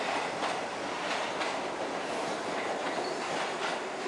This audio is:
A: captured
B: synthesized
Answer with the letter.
A